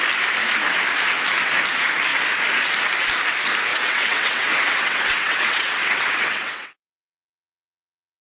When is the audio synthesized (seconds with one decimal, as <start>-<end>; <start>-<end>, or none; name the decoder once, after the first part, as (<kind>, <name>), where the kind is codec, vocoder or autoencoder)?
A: 3.7-8.2 (vocoder, WaveNeXt)